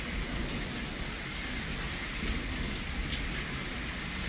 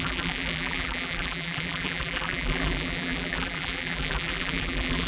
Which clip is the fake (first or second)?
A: second